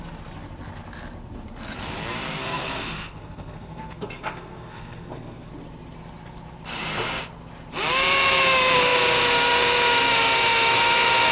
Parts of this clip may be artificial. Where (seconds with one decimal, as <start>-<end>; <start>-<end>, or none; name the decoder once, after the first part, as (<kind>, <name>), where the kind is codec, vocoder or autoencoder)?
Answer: 2.4-5.5 (codec, SNAC)